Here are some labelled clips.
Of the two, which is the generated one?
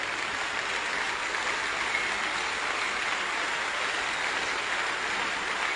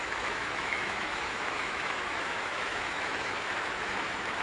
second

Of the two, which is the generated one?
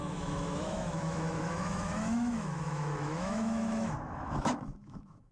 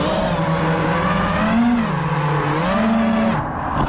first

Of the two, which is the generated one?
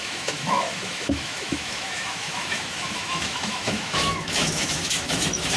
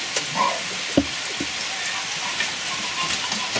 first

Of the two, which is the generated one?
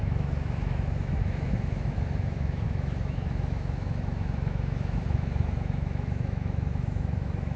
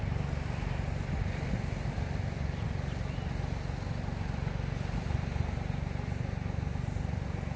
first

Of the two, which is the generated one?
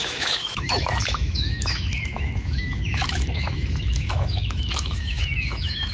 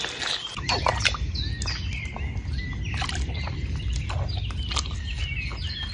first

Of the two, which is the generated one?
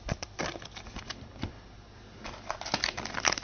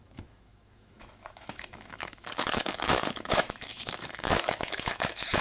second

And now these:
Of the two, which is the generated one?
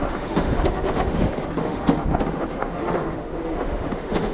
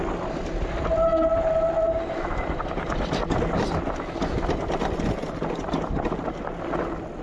first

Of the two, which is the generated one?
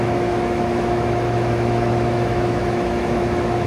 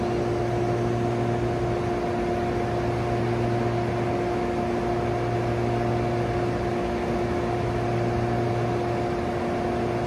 first